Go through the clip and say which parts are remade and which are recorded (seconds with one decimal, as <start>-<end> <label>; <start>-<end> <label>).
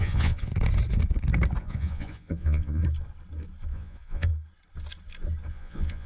0.0-0.5 remade; 0.5-1.6 recorded; 1.6-2.8 remade; 2.8-3.7 recorded; 3.7-4.3 remade; 4.3-5.5 recorded; 5.5-6.1 remade